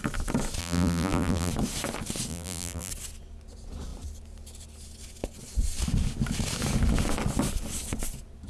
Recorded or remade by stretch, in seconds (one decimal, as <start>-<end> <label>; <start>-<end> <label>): 0.0-0.6 recorded; 0.6-1.5 remade; 1.5-2.3 recorded; 2.3-2.9 remade; 2.9-8.5 recorded